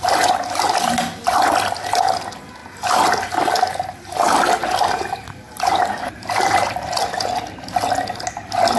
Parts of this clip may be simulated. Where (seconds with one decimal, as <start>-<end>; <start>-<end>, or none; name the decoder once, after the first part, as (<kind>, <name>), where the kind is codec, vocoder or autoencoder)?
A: none